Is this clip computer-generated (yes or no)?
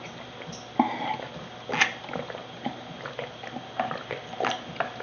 no